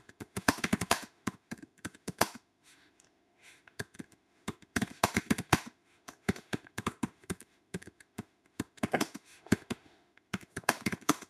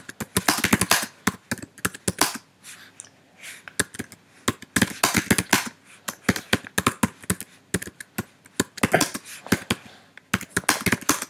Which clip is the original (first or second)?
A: second